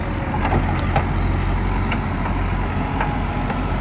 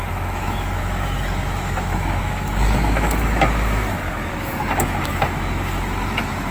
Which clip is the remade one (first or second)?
second